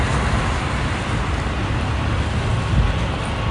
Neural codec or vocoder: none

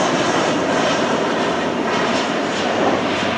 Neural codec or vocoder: vocoder, BigVGAN v2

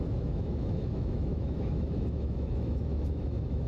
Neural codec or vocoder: autoencoder, DAC-VAE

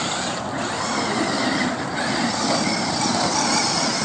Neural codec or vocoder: none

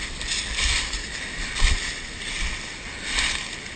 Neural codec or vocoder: none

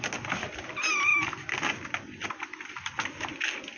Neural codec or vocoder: none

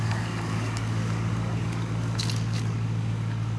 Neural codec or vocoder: codec, DAC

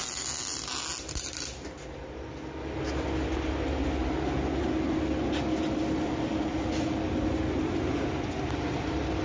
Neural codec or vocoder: none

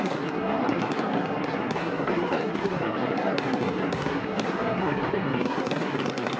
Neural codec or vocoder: codec, SNAC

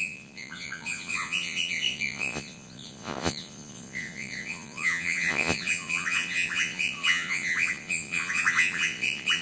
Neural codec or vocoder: vocoder, Vocos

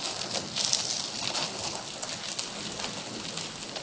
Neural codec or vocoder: none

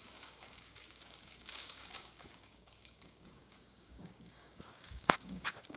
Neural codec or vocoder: codec, DAC